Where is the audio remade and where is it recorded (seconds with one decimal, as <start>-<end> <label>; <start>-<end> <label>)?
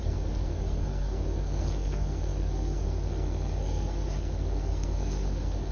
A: 0.0-5.7 remade